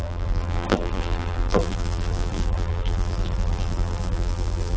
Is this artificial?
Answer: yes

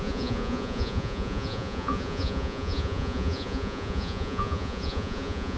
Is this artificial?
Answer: yes